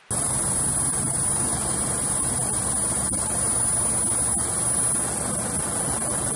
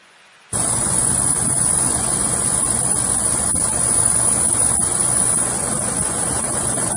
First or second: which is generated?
second